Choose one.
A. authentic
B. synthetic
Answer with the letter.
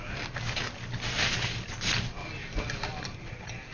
A